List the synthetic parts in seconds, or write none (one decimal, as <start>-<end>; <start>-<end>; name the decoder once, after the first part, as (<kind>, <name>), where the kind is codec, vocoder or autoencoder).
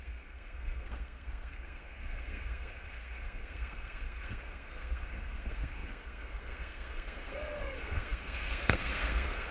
0.0-9.5 (codec, SNAC)